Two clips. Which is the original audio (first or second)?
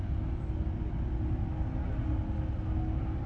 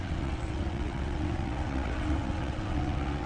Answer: first